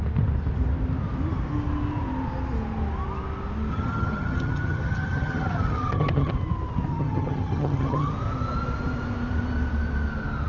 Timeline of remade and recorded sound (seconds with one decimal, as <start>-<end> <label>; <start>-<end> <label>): 0.0-3.7 recorded; 3.7-6.3 remade; 6.3-6.9 recorded; 6.9-8.1 remade; 8.1-10.5 recorded